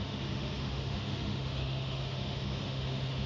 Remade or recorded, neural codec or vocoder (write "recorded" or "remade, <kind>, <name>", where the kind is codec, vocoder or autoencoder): remade, autoencoder, DAC-VAE